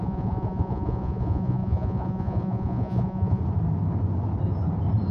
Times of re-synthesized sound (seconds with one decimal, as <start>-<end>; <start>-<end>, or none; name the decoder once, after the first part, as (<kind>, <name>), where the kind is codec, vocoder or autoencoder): 0.0-3.4 (vocoder, Vocos)